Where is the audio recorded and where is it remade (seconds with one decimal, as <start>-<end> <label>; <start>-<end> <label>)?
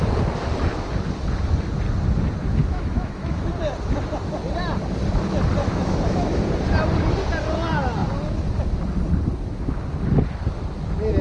0.0-2.6 recorded; 2.6-3.4 remade; 3.4-5.6 recorded; 5.6-6.4 remade; 6.4-11.2 recorded